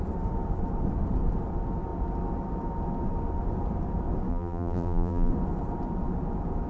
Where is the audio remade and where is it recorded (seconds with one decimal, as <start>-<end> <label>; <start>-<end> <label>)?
0.0-4.3 recorded; 4.3-5.3 remade; 5.3-6.7 recorded